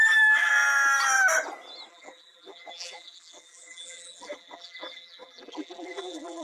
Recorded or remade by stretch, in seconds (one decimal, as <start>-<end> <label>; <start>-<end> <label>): 0.0-0.5 remade; 0.5-1.9 recorded; 1.9-6.4 remade